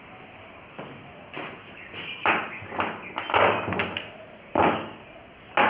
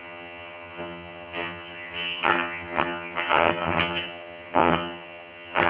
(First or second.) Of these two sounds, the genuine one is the first